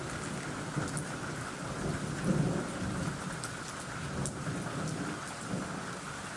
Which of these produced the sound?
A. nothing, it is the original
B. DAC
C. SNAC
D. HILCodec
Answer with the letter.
A